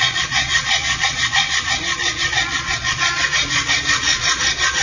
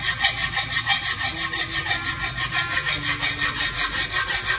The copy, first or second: first